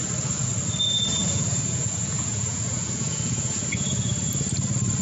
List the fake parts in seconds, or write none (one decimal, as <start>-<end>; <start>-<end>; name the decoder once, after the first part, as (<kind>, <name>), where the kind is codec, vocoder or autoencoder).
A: 1.2-4.2 (vocoder, Vocos)